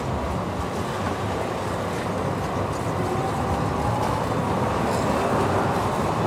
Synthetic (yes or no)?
no